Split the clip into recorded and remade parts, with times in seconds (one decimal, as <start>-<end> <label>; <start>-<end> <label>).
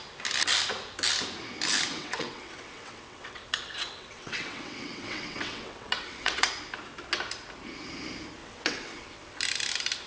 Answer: 0.0-1.9 recorded; 1.9-6.5 remade; 6.5-8.4 recorded; 8.4-9.4 remade; 9.4-10.1 recorded